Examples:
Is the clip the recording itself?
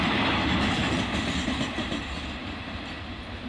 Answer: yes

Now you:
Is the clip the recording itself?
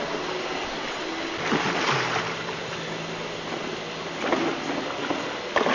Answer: yes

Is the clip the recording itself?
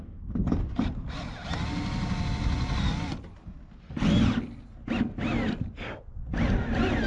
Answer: yes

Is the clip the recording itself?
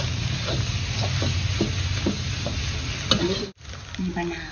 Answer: yes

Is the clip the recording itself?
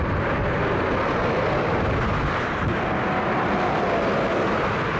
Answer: yes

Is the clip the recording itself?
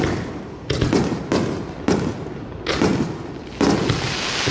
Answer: yes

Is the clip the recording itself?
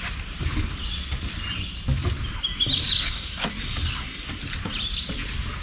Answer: yes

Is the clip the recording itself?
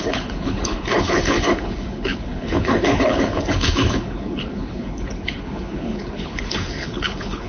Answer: no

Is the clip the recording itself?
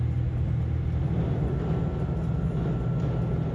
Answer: yes